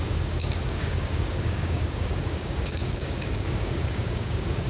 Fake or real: fake